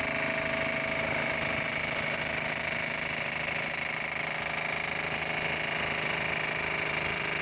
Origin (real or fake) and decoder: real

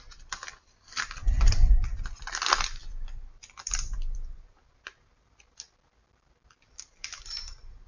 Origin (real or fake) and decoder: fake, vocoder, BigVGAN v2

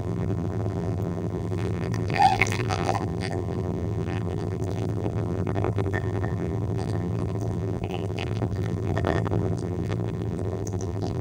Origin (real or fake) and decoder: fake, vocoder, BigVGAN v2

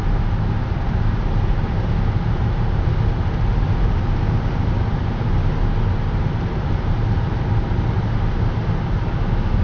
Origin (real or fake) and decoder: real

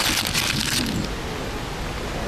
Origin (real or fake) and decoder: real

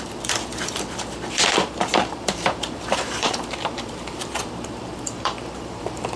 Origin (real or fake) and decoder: fake, vocoder, BigVGAN v2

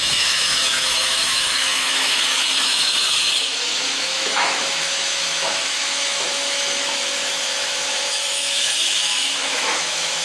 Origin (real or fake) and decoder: fake, autoencoder, DAC-VAE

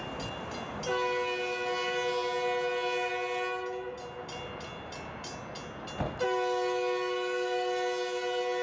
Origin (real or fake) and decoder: real